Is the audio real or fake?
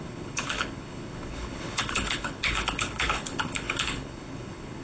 fake